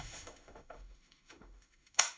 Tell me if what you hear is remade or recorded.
remade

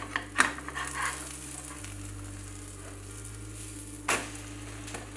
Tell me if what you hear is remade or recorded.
recorded